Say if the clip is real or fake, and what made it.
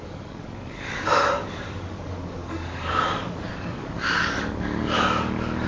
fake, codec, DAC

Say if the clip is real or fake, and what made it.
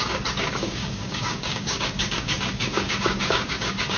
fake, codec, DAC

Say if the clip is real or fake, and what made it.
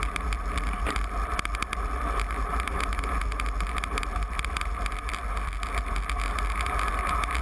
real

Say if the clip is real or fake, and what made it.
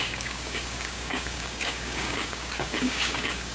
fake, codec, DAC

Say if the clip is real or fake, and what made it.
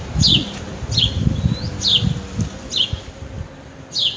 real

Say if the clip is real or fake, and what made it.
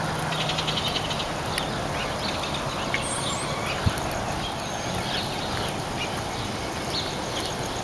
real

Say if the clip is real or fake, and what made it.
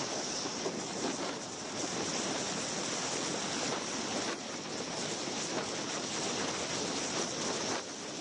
real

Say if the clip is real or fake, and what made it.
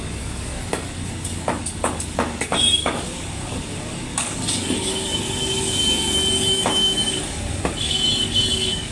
fake, codec, DAC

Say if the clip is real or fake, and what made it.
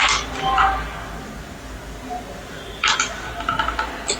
real